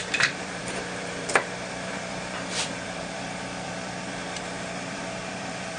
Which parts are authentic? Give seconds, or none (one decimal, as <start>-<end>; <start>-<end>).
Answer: 4.2-4.9